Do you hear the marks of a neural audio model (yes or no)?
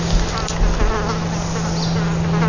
no